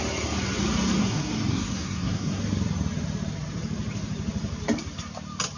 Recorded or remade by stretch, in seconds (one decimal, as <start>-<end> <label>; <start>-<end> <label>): 0.0-1.0 recorded; 1.0-2.4 remade; 2.4-5.6 recorded